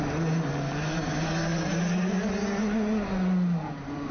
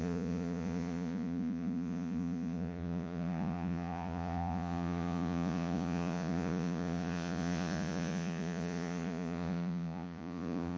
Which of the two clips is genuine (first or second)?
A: first